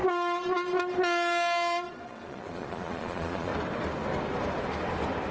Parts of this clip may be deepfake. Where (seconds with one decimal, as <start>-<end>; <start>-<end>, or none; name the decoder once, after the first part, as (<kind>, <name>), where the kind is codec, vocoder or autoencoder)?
1.9-3.5 (vocoder, Vocos)